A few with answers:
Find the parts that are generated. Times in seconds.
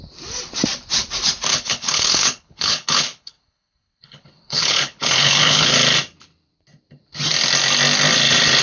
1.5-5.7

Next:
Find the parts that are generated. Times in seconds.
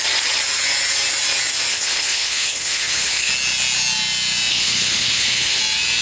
1.7-3.3; 4.5-5.6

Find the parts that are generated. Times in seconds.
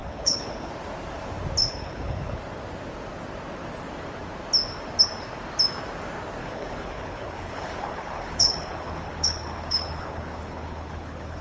0.0-0.7; 1.7-2.4; 6.4-11.4